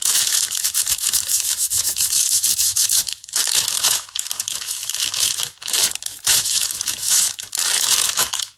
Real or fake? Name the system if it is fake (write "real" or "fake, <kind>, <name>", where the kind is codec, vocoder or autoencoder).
fake, autoencoder, DAC-VAE